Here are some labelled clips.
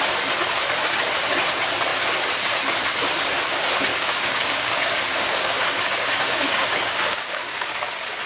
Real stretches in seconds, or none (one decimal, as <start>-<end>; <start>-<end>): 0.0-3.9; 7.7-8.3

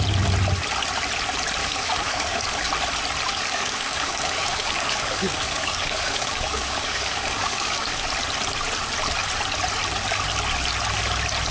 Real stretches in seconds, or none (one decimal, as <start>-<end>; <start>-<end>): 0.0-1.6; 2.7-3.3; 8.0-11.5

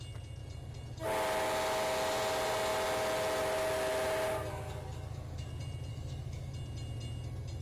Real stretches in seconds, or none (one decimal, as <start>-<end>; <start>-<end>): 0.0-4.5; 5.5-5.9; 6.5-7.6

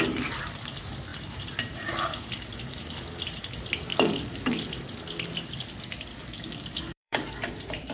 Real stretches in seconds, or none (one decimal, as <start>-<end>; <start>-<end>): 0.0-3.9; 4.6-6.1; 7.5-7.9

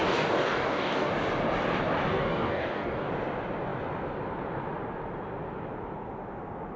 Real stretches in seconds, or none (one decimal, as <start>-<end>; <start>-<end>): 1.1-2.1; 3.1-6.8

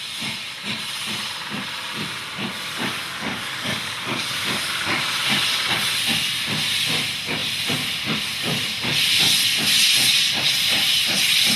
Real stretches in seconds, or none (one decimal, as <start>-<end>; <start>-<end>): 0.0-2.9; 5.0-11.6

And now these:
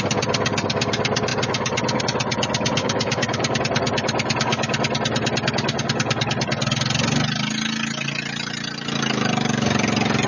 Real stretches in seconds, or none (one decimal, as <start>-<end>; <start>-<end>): 0.0-2.8; 3.6-10.3